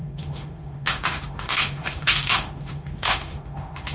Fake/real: fake